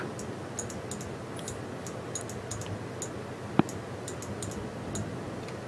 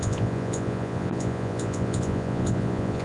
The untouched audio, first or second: first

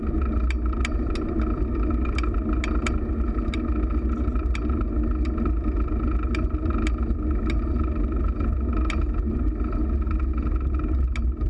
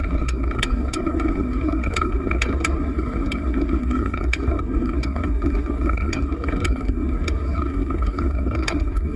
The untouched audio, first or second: first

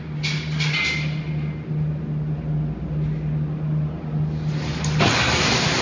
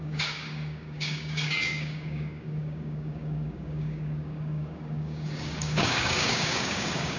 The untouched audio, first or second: first